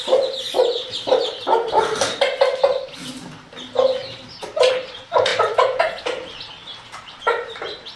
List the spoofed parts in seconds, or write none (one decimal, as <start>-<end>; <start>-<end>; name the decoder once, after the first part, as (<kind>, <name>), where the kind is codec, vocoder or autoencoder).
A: 4.0-4.7 (vocoder, BigVGAN v2); 6.6-7.6

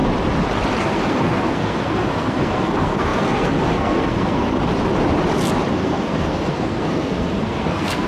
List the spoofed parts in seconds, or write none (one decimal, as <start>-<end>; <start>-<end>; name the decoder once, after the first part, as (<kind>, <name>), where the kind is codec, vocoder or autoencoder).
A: 0.8-4.6 (codec, SNAC); 5.7-8.1

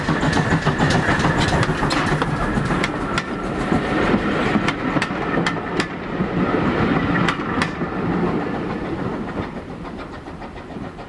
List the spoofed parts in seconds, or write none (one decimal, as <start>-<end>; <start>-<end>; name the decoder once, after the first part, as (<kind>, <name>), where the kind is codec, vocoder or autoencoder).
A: none

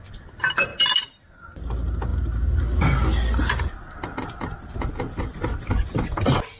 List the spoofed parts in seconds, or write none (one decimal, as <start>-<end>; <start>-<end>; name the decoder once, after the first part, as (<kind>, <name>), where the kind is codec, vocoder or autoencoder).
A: 0.7-1.3 (vocoder, BigVGAN v2)

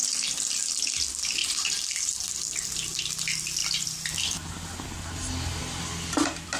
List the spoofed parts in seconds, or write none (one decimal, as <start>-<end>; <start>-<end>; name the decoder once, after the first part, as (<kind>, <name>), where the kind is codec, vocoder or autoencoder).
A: none

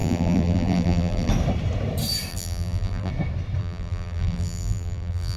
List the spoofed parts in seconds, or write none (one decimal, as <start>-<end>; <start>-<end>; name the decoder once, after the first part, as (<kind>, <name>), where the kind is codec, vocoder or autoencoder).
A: 0.0-1.3 (vocoder, BigVGAN v2); 2.3-3.1; 3.6-5.4

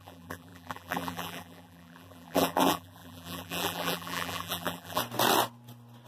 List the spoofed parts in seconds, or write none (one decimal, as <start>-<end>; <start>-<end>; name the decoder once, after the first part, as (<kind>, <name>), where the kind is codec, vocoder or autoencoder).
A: 0.0-5.0 (vocoder, BigVGAN v2)